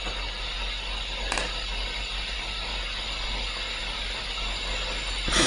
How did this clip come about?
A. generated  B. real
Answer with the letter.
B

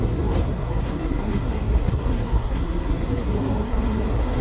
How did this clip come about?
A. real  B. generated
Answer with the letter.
B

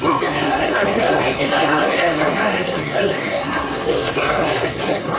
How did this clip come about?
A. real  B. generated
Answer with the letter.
B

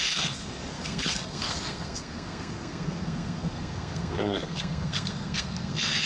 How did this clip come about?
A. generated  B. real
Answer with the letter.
A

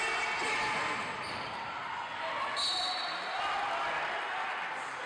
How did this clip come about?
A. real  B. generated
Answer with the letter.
A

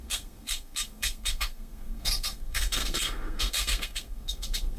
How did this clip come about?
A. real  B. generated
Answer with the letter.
B